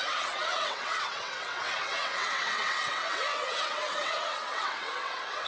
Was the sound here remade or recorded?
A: remade